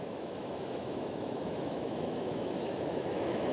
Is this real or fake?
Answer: fake